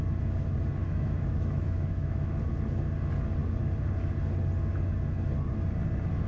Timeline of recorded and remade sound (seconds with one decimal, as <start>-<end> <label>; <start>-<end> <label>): 0.0-0.8 recorded; 0.8-2.4 remade; 2.4-6.3 recorded